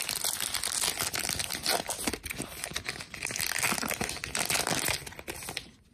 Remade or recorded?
recorded